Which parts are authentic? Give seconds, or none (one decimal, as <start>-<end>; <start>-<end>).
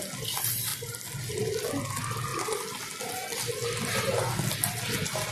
0.0-5.3